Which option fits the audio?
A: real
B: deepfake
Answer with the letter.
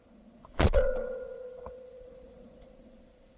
B